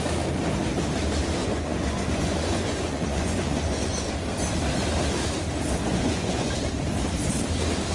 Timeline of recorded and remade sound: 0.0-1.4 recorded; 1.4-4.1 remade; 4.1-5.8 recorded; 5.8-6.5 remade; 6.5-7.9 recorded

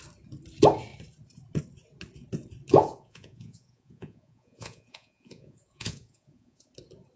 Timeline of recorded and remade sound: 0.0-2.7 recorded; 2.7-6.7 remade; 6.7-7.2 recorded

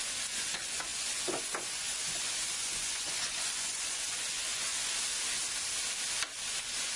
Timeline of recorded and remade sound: 0.0-4.7 remade; 4.7-6.4 recorded; 6.4-7.0 remade

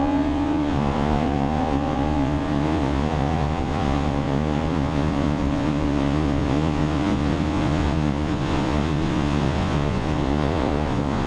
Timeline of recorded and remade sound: 0.0-11.3 remade

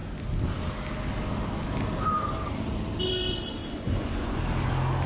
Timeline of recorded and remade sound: 0.0-3.6 recorded; 3.6-4.4 remade; 4.4-5.1 recorded

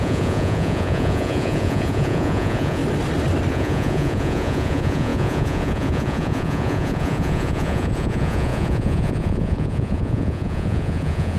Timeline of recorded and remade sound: 0.0-2.8 remade; 2.8-3.5 recorded; 3.5-11.4 remade